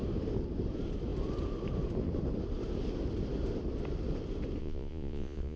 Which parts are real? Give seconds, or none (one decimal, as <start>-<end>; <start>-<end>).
0.0-4.6

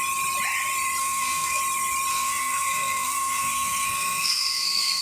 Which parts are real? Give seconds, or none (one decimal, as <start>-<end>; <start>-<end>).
0.0-1.0; 1.6-2.1

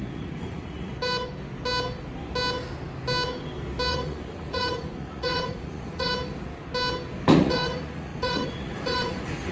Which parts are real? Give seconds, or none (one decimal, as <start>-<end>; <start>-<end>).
0.9-3.9; 6.1-7.3

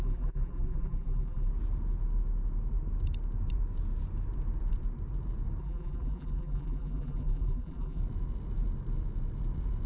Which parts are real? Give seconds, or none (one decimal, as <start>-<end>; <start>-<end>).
1.5-5.6; 8.0-9.9

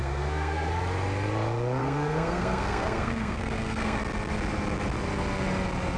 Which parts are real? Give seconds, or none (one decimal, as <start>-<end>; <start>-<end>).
0.7-1.8; 4.0-6.0

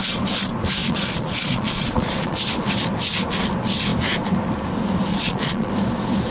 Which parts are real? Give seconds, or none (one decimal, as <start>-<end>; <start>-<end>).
0.0-0.8; 2.4-5.1; 5.7-6.3